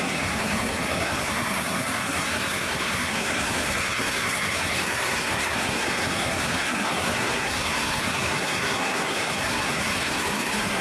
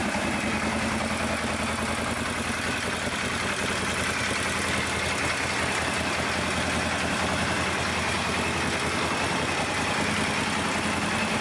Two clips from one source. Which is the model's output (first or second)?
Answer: first